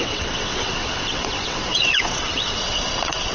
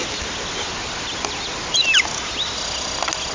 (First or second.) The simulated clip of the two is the first